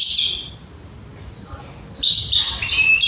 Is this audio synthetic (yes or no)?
no